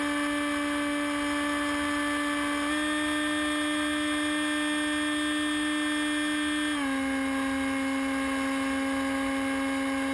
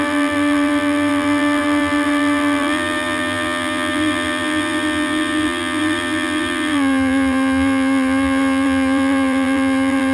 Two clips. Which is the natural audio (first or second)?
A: first